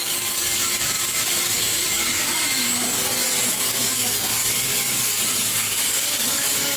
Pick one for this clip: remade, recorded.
remade